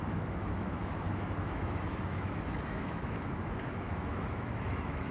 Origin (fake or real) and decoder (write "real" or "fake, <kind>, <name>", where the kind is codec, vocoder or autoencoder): fake, autoencoder, DAC-VAE